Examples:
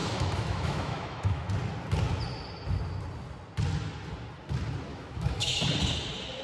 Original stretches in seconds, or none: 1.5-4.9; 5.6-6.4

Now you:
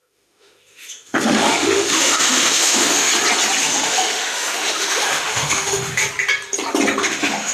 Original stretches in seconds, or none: 3.1-3.6; 6.0-7.0

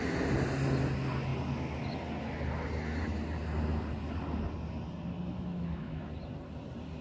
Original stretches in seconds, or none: 0.0-5.3; 6.0-7.0

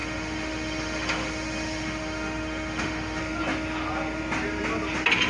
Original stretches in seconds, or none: 3.2-5.3

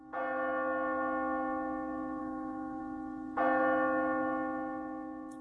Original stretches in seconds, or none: 0.0-2.2; 2.8-5.4

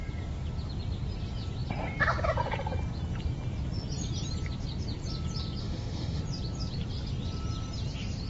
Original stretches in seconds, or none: 0.0-5.6; 6.2-8.3